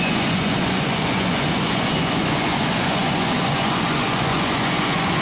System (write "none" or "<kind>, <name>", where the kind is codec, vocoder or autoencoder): vocoder, Vocos